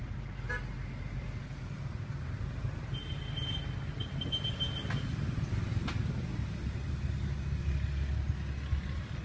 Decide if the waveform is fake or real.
real